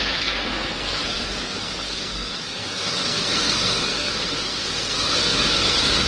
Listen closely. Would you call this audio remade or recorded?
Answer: remade